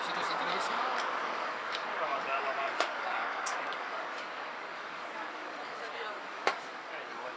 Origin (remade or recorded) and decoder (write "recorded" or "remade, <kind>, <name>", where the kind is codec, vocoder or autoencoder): remade, codec, DAC